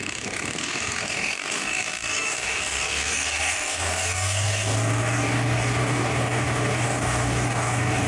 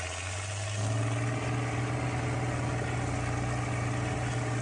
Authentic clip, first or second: second